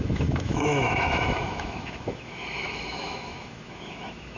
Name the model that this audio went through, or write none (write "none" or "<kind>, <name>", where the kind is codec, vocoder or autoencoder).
autoencoder, DAC-VAE